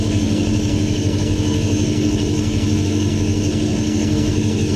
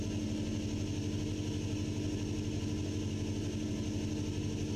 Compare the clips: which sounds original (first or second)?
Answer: second